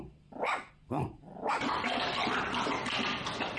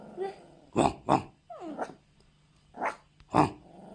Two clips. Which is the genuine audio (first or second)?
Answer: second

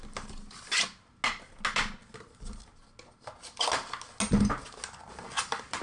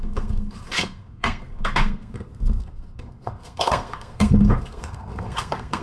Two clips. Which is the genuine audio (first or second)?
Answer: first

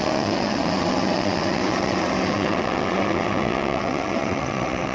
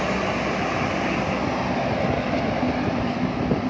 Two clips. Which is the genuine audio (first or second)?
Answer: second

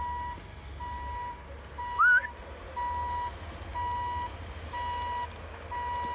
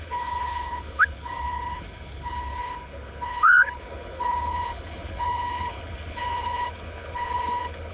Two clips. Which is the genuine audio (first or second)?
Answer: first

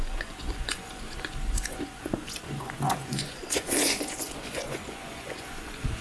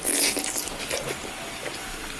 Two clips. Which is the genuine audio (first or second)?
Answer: second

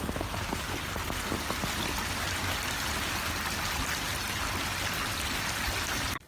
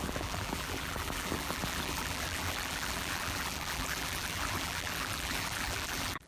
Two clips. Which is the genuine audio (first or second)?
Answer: first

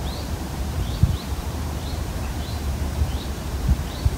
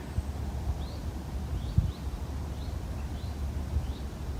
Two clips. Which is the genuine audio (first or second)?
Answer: second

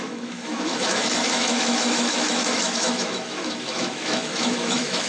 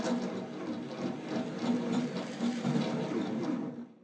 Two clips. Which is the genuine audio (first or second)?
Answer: second